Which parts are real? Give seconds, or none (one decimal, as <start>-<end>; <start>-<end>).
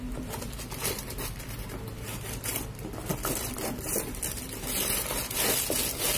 0.0-6.2